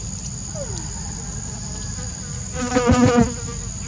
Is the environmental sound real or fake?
real